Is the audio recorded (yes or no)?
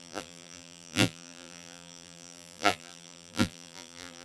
no